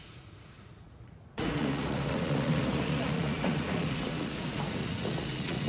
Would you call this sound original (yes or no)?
no